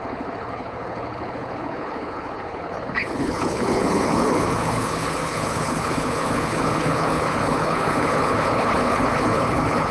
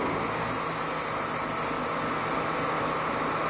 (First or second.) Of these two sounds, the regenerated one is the first